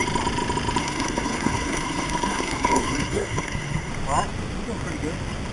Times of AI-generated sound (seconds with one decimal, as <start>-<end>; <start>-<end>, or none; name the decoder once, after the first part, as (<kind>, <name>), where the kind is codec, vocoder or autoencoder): 0.8-3.9 (codec, SNAC)